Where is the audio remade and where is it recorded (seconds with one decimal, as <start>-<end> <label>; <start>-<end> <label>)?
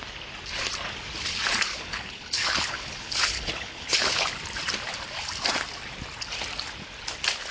0.0-1.7 recorded; 1.7-4.3 remade; 4.3-7.5 recorded